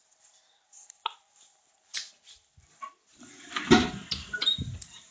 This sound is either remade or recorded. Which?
recorded